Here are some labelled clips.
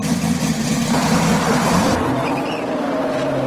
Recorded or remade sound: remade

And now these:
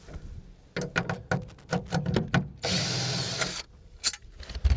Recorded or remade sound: recorded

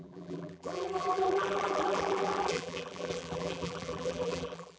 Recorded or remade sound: remade